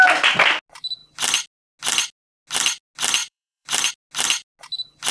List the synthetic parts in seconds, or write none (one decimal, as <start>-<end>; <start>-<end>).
3.2-3.9